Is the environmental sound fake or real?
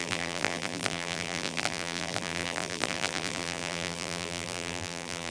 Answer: fake